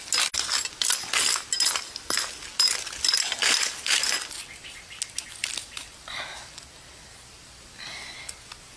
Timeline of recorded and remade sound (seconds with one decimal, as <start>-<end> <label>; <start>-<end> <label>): 0.0-8.8 recorded